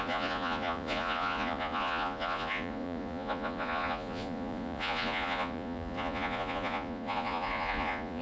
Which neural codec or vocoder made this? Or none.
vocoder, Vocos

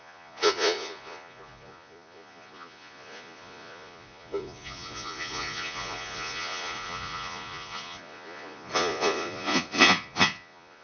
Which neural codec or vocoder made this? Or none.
vocoder, Vocos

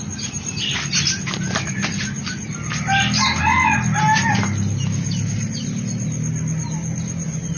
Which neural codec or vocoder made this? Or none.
none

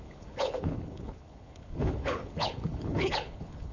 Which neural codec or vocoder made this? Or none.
codec, HILCodec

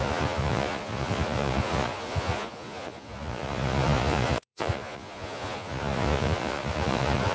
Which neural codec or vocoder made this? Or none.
vocoder, Vocos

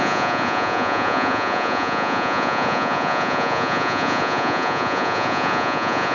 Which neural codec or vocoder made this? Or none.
vocoder, Vocos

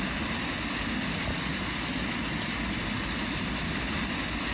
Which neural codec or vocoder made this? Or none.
none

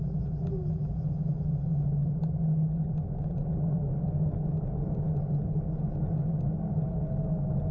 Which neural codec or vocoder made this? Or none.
none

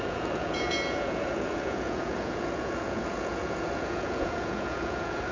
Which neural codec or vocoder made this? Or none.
vocoder, Vocos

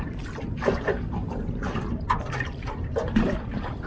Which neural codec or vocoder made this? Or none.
none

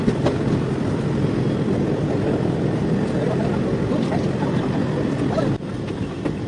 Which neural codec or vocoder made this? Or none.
none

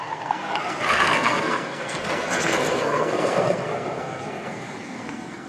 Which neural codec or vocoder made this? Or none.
codec, SNAC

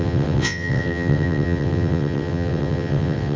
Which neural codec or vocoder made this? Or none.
vocoder, WaveNeXt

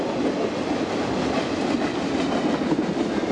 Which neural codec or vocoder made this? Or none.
none